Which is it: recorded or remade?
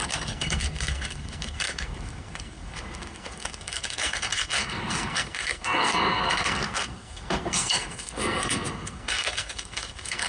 remade